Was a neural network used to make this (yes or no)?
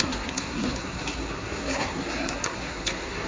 yes